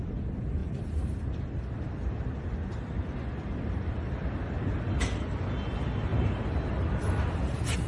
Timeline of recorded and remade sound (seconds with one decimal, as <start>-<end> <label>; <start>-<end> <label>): 0.0-7.9 recorded